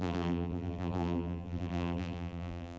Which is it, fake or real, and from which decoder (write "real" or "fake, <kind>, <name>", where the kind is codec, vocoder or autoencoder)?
fake, vocoder, BigVGAN v2